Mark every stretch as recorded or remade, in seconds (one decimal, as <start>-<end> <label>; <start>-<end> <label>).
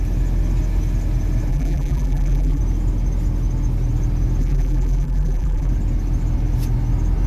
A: 0.0-1.5 recorded; 1.5-2.6 remade; 2.6-4.4 recorded; 4.4-5.7 remade; 5.7-7.3 recorded